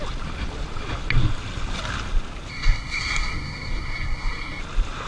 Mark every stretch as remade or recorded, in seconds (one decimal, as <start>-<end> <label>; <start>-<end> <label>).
0.0-2.5 recorded; 2.5-4.6 remade; 4.6-5.1 recorded